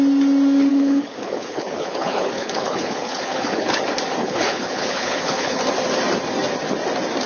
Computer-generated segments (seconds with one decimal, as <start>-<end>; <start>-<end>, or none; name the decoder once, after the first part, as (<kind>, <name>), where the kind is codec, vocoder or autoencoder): 0.7-3.8 (codec, HILCodec); 4.2-5.6